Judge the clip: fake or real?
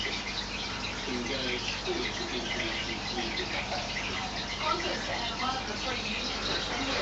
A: real